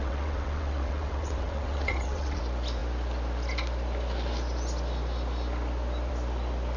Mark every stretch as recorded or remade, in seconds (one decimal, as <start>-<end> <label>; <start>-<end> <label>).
0.0-2.4 remade; 2.4-6.8 recorded